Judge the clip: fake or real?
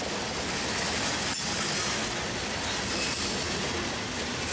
real